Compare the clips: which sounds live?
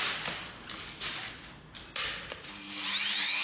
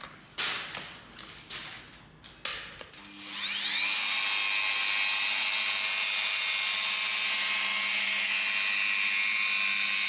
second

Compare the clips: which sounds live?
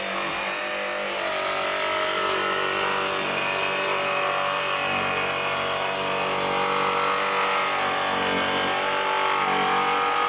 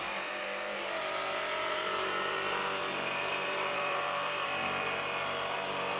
first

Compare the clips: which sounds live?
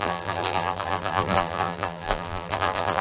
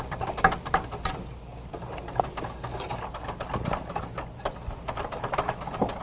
second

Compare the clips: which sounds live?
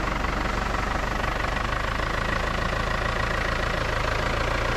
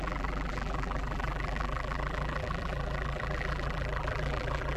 first